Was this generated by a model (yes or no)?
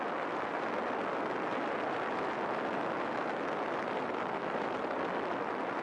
no